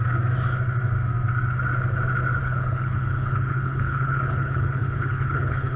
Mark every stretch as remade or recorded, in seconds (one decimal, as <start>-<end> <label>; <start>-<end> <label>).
0.0-2.4 recorded; 2.4-5.8 remade